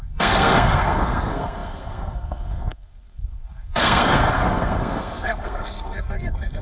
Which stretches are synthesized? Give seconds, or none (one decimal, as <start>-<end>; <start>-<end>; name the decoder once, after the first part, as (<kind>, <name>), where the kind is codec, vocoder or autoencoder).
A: 0.0-6.6 (codec, SNAC)